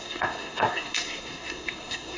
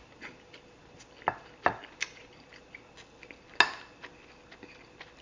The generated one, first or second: first